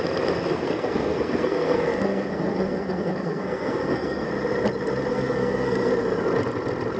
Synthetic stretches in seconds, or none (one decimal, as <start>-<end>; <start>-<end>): 0.5-4.3; 5.1-5.9